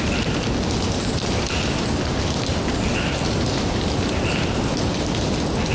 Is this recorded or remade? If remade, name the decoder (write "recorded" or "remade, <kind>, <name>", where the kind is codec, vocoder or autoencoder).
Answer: recorded